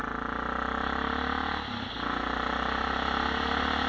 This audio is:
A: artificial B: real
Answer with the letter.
B